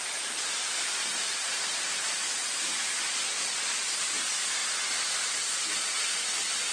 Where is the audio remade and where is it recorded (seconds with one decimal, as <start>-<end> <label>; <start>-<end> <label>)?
0.0-3.0 recorded; 3.0-4.0 remade; 4.0-6.7 recorded